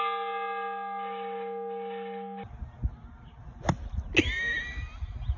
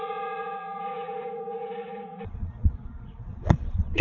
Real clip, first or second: first